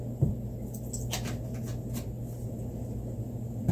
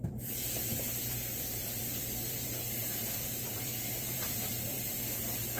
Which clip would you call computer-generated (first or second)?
second